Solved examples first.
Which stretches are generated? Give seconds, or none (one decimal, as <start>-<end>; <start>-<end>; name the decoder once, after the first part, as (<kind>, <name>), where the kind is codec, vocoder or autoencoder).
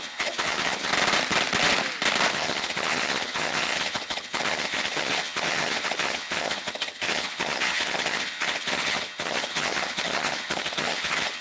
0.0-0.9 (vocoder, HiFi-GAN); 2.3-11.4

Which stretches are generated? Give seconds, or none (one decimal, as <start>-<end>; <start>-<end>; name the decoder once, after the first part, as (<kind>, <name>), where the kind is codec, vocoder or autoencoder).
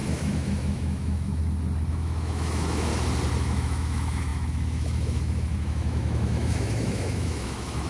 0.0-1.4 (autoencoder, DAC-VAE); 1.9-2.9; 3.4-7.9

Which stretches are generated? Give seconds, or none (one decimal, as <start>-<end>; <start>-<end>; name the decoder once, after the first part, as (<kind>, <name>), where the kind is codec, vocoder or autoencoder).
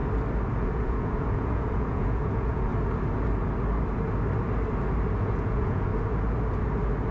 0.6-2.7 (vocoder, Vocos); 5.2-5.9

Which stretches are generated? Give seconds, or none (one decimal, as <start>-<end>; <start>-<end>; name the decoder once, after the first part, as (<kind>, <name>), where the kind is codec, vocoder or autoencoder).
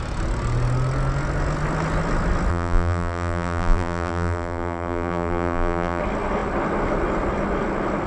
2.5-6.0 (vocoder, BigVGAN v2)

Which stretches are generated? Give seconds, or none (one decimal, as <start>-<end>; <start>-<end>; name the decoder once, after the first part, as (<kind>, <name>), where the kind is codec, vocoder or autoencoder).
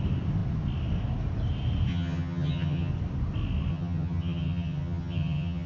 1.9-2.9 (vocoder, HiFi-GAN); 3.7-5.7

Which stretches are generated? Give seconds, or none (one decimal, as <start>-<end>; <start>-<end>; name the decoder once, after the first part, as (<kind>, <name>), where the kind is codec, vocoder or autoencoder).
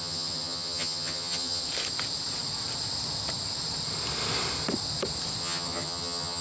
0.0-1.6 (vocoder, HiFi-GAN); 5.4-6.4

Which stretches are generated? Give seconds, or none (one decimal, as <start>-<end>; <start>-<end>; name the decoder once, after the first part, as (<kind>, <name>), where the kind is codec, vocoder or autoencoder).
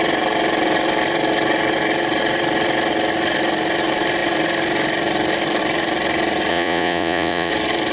6.5-7.5 (vocoder, Vocos)